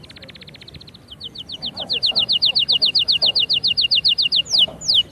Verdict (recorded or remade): recorded